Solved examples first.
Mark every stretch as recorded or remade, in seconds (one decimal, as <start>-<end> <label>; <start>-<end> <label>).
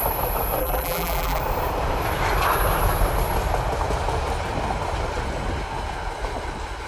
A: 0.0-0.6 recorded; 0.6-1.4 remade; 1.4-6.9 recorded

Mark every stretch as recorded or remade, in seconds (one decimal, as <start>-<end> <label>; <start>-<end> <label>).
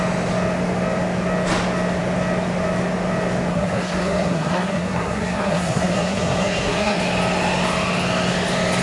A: 0.0-3.5 recorded; 3.5-7.0 remade; 7.0-8.8 recorded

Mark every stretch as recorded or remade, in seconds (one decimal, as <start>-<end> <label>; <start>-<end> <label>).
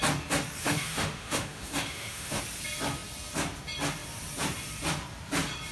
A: 0.0-0.6 recorded; 0.6-2.4 remade; 2.4-5.7 recorded